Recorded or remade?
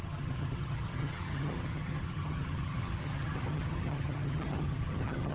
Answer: remade